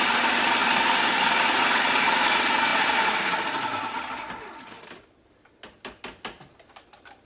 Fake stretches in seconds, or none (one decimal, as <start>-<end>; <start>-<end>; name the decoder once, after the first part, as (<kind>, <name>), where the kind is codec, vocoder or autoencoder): none